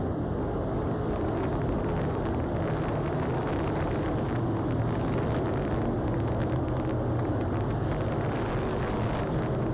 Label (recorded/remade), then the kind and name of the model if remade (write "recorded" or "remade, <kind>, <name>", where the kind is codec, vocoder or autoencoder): recorded